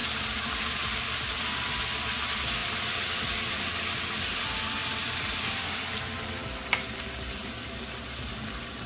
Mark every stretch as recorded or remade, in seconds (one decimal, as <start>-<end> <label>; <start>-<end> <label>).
0.0-8.9 recorded

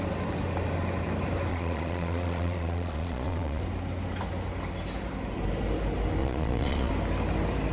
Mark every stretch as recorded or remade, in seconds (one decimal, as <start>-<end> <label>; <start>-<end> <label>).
0.0-1.5 recorded; 1.5-3.6 remade; 3.6-6.2 recorded; 6.2-6.9 remade; 6.9-7.7 recorded

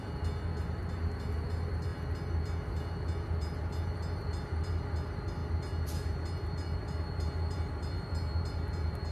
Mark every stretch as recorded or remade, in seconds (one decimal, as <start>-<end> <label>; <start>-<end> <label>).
0.0-9.1 recorded

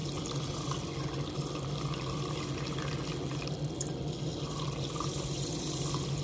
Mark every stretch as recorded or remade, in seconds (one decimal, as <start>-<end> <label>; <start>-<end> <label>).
0.0-6.2 recorded

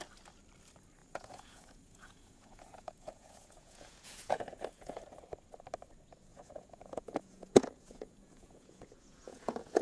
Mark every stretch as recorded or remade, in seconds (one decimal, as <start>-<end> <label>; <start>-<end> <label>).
0.0-1.0 recorded; 1.0-5.0 remade; 5.0-6.3 recorded; 6.3-9.8 remade

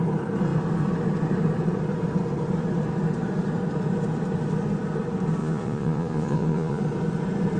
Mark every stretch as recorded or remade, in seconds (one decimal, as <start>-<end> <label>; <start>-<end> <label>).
0.0-5.4 recorded; 5.4-6.8 remade; 6.8-7.6 recorded